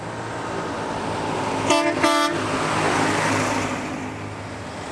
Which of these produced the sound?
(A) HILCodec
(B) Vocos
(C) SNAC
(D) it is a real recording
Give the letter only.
D